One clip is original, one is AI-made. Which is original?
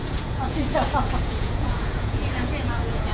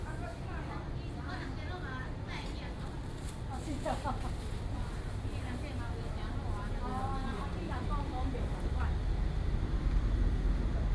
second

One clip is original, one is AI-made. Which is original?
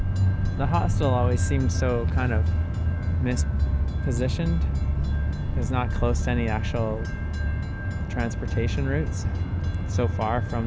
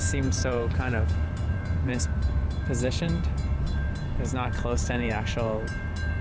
first